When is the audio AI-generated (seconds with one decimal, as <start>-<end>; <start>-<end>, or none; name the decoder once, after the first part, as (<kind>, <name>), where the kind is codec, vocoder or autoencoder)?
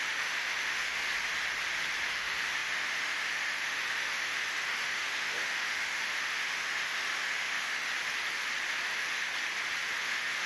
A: 0.0-1.0 (autoencoder, DAC-VAE); 2.1-7.9; 8.9-9.3; 10.0-10.5